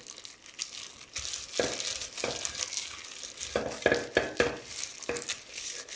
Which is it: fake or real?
real